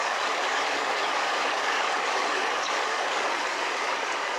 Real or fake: fake